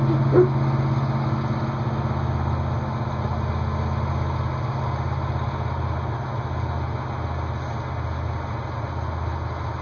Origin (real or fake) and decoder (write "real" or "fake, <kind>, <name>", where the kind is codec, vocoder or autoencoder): real